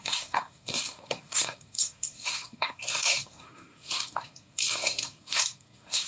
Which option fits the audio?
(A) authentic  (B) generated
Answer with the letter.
B